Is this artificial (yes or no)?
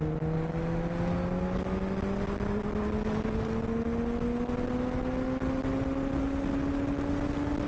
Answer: no